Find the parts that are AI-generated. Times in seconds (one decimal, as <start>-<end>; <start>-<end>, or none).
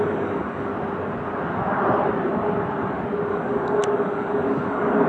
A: 0.0-0.7; 3.3-5.1